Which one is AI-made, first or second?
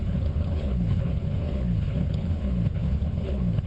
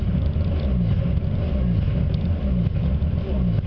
first